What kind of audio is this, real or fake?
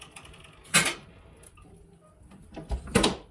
real